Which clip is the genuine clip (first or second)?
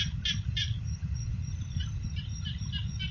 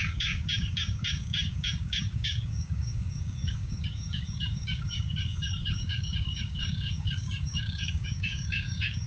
first